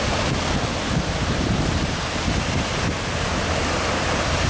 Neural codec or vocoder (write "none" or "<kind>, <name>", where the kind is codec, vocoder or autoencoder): none